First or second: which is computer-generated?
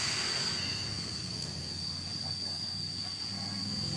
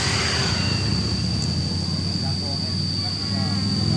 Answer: first